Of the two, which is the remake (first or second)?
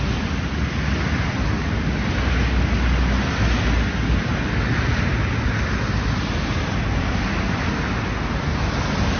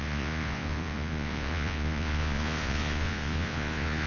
second